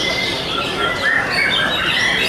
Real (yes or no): yes